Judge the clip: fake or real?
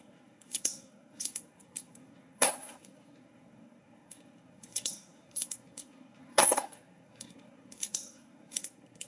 fake